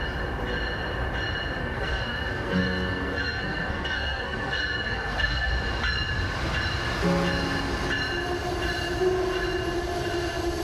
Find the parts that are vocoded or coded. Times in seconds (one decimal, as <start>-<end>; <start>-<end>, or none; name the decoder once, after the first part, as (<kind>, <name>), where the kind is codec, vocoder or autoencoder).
1.6-5.5 (codec, SNAC)